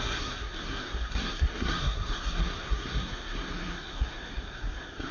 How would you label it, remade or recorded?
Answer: remade